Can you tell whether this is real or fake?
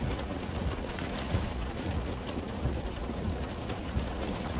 fake